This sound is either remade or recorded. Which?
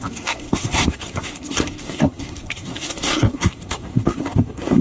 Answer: remade